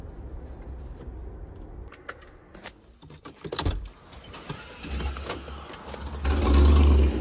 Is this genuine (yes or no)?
yes